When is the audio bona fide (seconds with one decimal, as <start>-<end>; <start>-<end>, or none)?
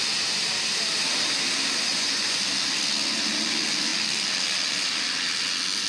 0.0-1.9; 2.4-5.9